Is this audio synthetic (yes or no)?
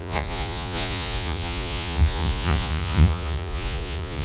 yes